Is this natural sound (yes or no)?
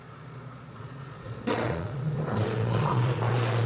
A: no